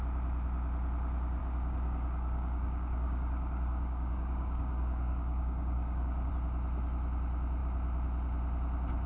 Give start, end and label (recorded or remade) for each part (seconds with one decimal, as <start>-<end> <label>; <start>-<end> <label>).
0.0-1.4 recorded; 1.4-6.3 remade; 6.3-9.1 recorded